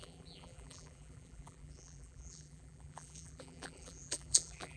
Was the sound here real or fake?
fake